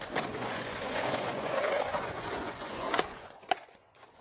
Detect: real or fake fake